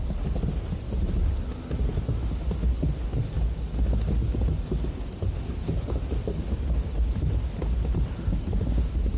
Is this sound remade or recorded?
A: recorded